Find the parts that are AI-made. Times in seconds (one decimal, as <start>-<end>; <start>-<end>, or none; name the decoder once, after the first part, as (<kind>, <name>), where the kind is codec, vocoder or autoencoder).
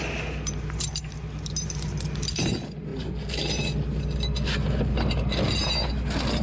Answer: none